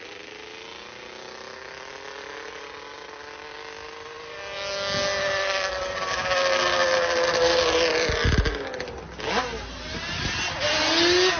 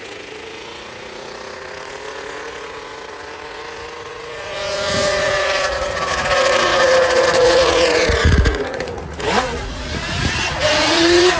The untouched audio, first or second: first